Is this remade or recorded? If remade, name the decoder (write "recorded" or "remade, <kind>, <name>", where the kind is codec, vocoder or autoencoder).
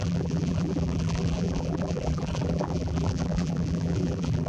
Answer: remade, vocoder, BigVGAN v2